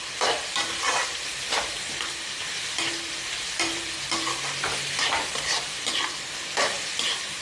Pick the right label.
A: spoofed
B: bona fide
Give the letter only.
A